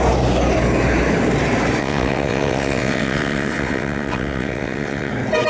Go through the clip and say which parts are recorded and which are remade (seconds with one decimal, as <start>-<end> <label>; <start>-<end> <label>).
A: 0.0-1.8 recorded; 1.8-5.1 remade; 5.1-5.5 recorded